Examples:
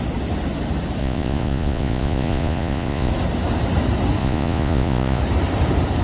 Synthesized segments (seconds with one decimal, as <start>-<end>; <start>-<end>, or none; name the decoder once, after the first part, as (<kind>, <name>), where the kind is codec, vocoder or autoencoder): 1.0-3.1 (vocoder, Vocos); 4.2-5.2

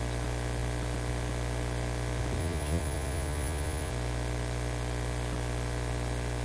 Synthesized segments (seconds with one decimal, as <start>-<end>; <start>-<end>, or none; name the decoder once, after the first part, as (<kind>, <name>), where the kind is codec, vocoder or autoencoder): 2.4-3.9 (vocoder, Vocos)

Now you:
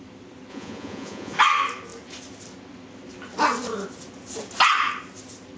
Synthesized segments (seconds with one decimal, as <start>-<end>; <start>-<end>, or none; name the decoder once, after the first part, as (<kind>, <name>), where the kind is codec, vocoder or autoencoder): 0.5-1.4 (vocoder, Vocos)

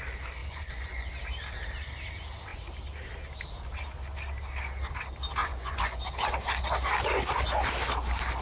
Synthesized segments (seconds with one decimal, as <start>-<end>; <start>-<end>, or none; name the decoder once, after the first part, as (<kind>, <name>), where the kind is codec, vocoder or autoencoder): 0.4-1.1 (vocoder, Vocos); 5.4-6.0

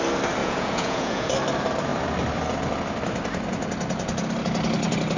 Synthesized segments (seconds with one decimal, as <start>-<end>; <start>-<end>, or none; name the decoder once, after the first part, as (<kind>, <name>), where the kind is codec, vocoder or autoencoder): 0.4-1.3 (vocoder, Vocos)

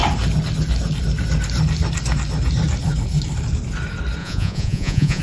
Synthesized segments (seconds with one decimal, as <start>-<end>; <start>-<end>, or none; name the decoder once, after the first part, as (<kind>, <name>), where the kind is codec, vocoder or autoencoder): 4.2-5.2 (vocoder, Vocos)

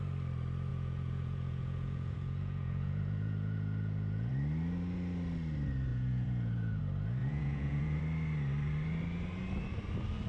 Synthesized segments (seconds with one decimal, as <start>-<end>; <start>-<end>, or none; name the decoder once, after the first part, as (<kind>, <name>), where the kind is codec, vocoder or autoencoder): 0.7-4.3 (vocoder, Vocos); 5.9-6.8; 7.2-8.0